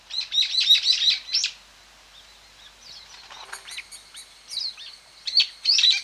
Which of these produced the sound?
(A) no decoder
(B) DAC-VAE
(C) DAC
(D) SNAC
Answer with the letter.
A